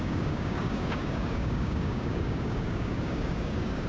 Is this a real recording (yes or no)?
no